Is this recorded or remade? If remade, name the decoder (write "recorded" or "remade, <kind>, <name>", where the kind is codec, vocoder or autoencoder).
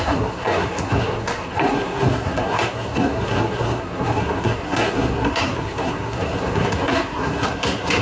remade, codec, SNAC